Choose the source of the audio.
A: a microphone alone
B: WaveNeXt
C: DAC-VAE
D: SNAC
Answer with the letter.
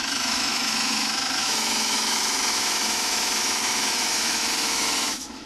C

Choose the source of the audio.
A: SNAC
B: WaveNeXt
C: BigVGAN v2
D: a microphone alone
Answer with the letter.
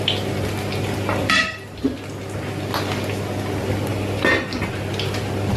D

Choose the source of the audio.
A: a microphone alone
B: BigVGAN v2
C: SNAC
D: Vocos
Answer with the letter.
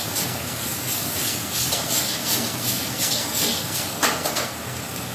C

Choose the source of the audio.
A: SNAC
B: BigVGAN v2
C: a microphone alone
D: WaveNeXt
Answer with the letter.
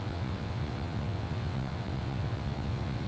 D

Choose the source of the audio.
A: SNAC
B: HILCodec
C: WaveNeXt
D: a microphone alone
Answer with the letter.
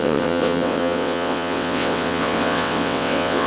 C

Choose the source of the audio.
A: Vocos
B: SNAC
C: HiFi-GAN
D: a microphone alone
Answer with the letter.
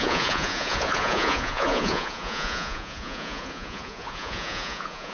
A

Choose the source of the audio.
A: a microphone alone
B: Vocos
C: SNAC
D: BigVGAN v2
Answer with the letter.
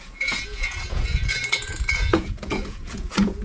B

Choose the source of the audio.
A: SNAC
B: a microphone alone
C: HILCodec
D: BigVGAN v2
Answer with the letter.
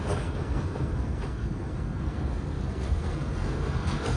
A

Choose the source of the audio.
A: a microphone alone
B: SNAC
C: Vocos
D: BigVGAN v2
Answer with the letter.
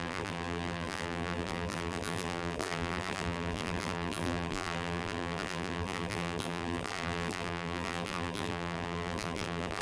D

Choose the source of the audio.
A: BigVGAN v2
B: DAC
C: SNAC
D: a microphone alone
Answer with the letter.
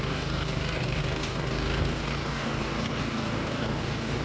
B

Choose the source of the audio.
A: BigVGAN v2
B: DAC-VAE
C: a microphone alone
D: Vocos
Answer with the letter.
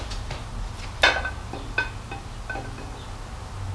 C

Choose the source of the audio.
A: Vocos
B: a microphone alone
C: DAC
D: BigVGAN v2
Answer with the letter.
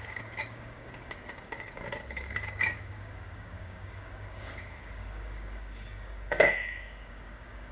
C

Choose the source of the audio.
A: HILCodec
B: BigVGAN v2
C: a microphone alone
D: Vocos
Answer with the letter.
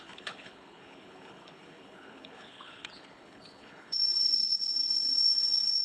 A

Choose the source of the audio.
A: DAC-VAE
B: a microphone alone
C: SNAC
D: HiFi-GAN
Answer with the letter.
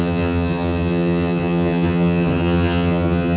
D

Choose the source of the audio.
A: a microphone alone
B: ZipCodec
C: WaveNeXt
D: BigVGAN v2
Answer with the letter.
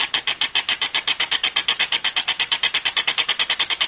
A